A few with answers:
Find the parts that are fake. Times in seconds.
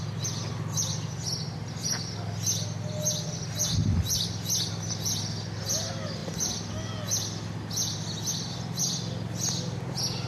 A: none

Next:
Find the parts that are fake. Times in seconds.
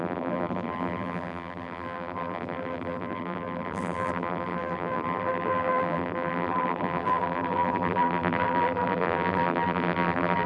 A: 0.0-10.5 (vocoder, BigVGAN v2)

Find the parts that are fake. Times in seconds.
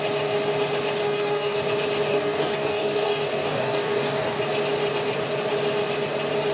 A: 1.0-1.6 (codec, DAC); 2.1-4.4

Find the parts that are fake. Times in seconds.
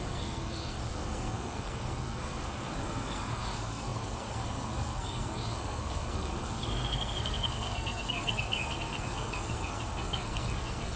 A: 0.0-11.0 (codec, SNAC)